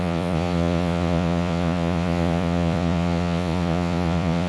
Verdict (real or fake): fake